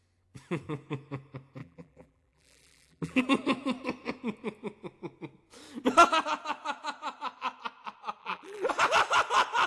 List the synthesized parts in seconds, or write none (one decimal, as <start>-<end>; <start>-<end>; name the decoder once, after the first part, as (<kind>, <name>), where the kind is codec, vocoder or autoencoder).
1.6-3.2 (vocoder, BigVGAN v2); 8.2-8.7